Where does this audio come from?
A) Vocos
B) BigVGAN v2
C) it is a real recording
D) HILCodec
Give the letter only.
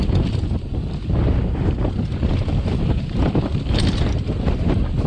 C